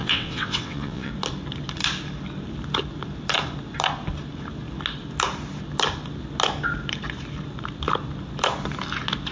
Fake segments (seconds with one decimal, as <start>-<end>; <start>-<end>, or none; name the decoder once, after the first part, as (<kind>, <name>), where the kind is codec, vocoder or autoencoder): 0.0-1.1 (vocoder, WaveNeXt)